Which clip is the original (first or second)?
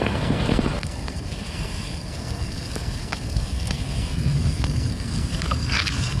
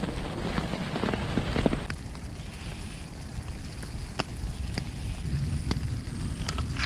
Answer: second